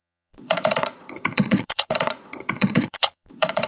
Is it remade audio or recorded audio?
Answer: remade